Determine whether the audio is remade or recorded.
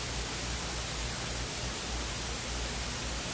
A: recorded